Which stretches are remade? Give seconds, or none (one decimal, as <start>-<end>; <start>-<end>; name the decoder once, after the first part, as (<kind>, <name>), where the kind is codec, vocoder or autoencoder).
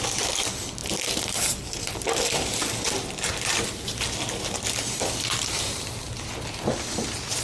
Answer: none